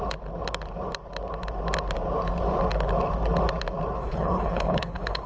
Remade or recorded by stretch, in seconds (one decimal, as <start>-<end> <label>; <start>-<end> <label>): 0.0-4.0 recorded; 4.0-5.3 remade